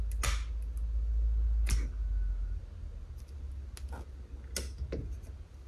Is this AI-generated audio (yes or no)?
no